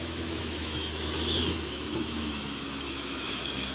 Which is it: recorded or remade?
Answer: remade